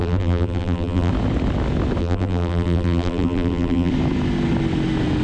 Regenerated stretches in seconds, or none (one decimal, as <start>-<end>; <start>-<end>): 0.0-1.1; 2.0-3.9